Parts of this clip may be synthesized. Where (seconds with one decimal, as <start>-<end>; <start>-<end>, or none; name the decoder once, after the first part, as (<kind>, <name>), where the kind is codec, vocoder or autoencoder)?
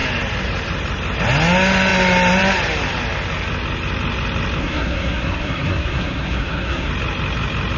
4.6-6.9 (codec, SNAC)